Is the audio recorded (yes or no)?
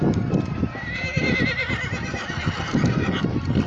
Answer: yes